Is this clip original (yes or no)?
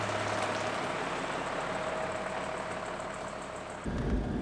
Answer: yes